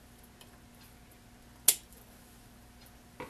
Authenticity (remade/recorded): recorded